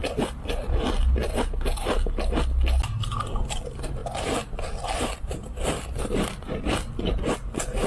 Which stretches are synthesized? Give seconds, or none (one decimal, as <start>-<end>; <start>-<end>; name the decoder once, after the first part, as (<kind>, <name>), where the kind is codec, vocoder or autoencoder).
none